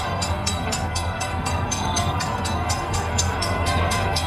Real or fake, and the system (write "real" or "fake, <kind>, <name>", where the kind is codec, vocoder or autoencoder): fake, codec, SNAC